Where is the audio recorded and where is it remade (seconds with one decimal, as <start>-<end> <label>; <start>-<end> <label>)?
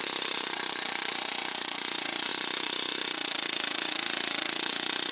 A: 0.0-5.1 remade